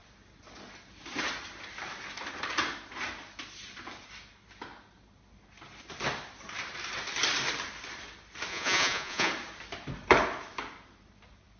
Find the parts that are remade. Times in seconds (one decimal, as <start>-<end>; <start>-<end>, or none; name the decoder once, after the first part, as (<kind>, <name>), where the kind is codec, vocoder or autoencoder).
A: 8.5-9.3 (vocoder, Vocos)